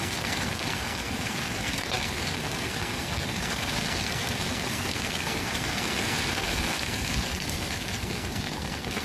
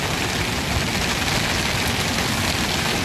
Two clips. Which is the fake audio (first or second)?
first